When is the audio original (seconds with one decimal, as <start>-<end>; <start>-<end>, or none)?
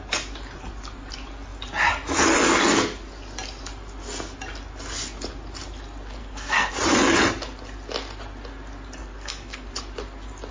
0.0-6.2; 6.7-9.0; 9.7-10.5